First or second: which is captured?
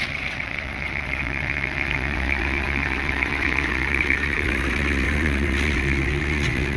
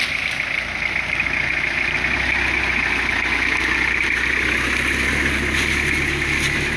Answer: second